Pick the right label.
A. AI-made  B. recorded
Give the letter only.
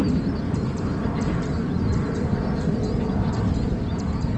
B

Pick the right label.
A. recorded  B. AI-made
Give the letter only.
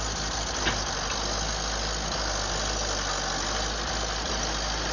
A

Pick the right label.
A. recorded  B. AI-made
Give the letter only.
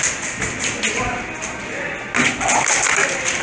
A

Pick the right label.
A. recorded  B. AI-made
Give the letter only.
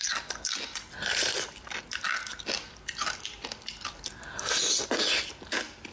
A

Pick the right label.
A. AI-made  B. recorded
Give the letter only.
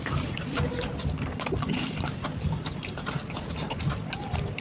B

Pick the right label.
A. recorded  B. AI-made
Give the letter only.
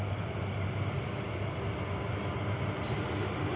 A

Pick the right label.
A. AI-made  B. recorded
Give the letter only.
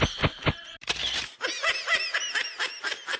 B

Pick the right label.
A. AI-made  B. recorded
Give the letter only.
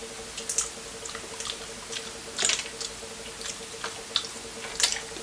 B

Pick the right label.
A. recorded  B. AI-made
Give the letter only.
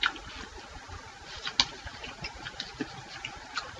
A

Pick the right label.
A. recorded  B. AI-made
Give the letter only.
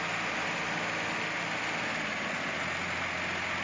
A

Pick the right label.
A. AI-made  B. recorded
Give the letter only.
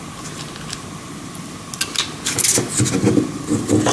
B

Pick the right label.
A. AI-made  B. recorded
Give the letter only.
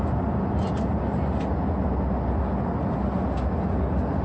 B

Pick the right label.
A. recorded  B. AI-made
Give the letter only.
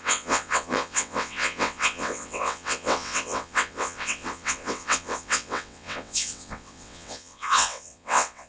B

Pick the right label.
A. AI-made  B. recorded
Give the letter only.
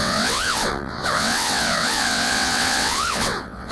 A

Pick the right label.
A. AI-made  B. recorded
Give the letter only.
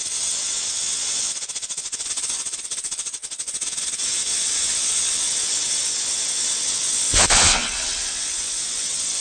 A